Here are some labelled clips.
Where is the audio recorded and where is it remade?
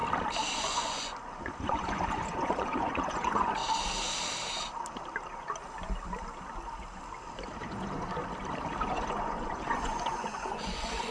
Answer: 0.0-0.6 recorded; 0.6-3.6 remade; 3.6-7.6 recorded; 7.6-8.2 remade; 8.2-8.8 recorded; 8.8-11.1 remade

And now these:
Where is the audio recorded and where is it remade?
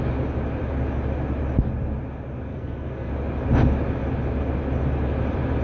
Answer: 0.0-2.5 recorded; 2.5-3.1 remade; 3.1-5.6 recorded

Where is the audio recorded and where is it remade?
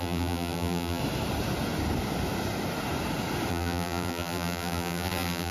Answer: 0.0-1.0 remade; 1.0-3.5 recorded; 3.5-5.5 remade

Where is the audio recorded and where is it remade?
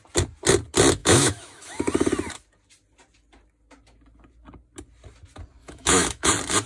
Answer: 0.0-1.0 recorded; 1.0-1.8 remade; 1.8-5.6 recorded; 5.6-6.3 remade; 6.3-6.7 recorded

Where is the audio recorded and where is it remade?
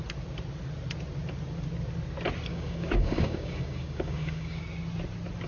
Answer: 0.0-2.5 recorded; 2.5-4.6 remade; 4.6-5.5 recorded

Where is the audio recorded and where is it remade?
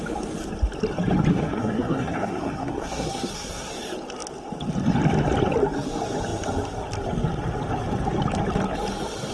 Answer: 0.0-1.3 recorded; 1.3-3.7 remade; 3.7-9.3 recorded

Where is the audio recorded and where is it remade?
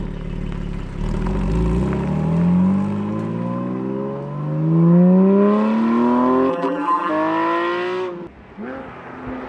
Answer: 0.0-6.5 recorded; 6.5-7.1 remade; 7.1-9.5 recorded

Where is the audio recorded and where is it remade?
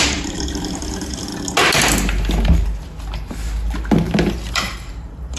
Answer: 0.0-1.3 remade; 1.3-4.5 recorded; 4.5-5.4 remade